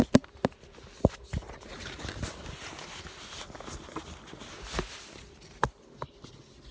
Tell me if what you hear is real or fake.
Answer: real